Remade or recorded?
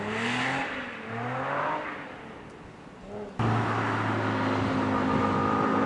recorded